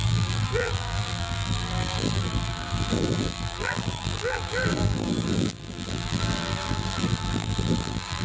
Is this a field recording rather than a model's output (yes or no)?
no